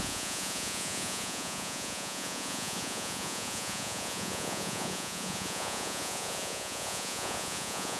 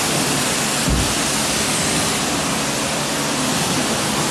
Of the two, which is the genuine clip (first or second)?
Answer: second